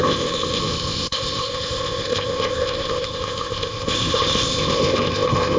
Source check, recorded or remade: remade